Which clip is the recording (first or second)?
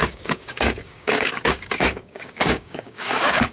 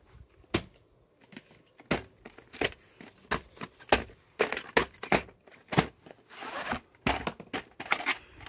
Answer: second